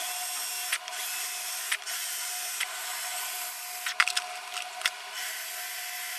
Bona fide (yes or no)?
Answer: yes